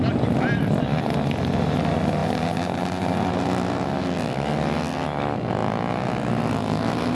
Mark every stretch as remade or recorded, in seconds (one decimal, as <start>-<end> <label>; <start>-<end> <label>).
0.0-7.1 recorded